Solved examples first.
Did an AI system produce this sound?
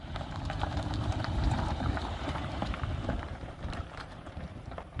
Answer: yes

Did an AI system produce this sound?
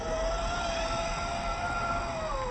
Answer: no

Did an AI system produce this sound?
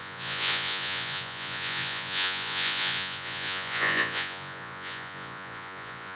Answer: yes